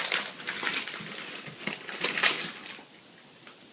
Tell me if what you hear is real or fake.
real